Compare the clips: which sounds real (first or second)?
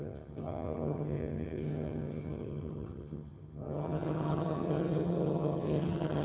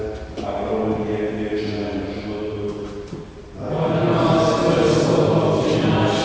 second